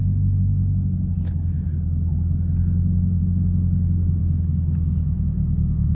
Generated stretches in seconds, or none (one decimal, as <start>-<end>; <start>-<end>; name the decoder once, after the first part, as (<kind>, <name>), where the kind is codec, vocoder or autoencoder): 4.2-5.9 (autoencoder, DAC-VAE)